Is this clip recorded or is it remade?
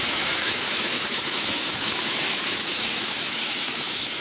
remade